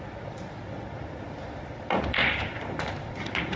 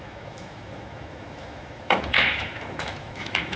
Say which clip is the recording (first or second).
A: first